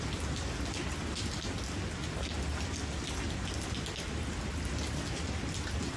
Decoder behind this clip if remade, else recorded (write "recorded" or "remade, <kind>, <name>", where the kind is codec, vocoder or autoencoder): recorded